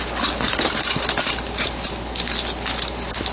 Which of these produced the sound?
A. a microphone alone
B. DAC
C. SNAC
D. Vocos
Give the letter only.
A